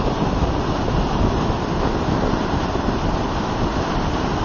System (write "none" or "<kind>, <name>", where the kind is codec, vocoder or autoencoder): none